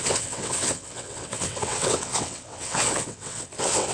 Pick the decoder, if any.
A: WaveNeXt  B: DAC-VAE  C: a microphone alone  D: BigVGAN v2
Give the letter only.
A